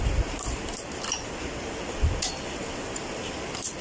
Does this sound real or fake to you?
fake